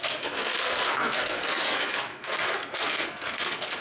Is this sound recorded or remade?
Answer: remade